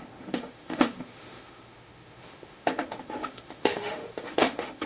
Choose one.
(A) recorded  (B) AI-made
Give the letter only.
B